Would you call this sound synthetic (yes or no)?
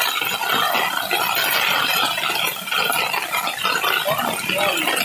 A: no